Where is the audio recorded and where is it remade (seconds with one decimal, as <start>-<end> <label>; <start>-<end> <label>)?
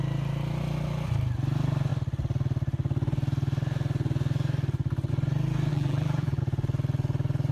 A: 0.0-5.7 recorded; 5.7-6.4 remade; 6.4-7.5 recorded